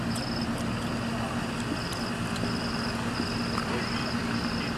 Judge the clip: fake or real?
real